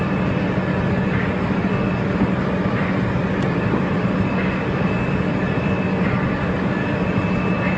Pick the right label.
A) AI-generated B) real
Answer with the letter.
B